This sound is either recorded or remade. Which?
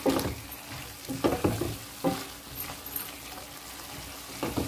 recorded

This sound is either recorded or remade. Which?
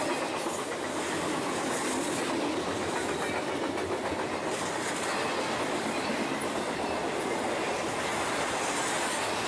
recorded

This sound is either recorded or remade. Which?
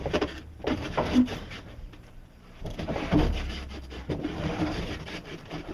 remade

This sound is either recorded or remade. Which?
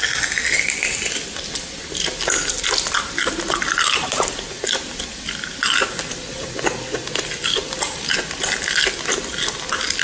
recorded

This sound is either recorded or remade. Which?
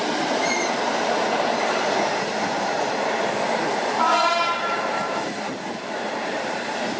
remade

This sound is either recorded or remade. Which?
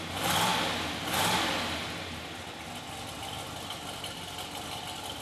recorded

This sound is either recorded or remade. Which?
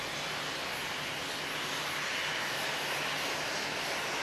recorded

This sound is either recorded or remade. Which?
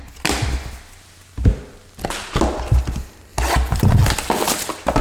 recorded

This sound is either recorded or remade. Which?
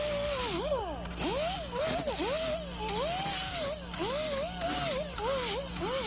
recorded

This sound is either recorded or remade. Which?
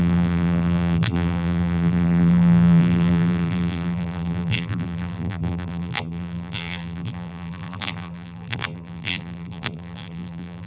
remade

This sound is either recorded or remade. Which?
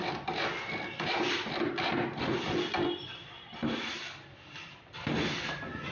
remade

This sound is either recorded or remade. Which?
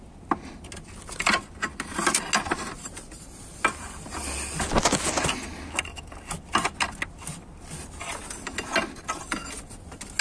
recorded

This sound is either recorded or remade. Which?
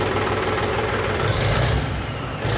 remade